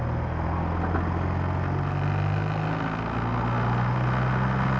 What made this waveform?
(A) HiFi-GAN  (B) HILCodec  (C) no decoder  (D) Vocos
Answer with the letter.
C